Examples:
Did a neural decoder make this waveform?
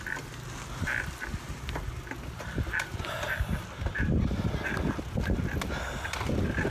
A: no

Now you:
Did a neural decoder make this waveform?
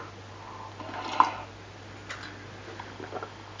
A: no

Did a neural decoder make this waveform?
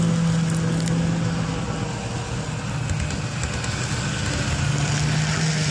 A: no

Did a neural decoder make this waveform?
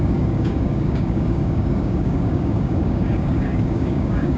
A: yes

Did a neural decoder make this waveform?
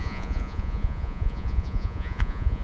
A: yes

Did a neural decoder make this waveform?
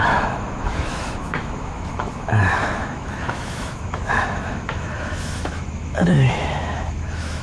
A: yes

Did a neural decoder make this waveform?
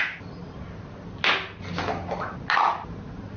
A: no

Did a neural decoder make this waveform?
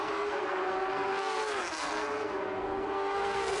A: yes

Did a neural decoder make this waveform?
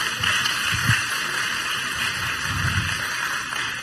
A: yes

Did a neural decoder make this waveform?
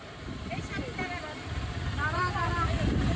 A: no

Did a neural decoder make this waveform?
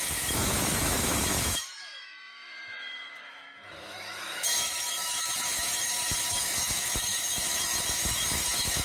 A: yes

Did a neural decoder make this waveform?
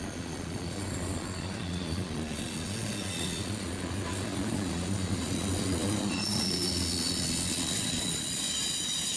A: yes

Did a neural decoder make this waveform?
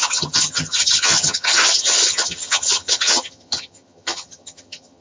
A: yes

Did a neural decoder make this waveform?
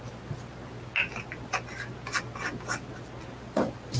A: no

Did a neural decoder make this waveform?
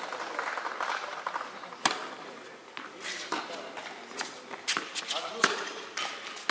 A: no